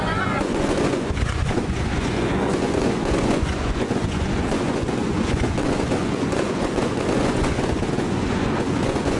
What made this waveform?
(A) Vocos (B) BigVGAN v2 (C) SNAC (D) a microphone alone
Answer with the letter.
A